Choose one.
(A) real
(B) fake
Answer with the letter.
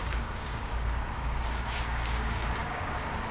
B